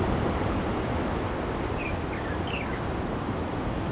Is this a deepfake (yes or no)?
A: no